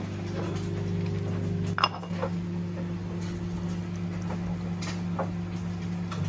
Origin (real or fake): real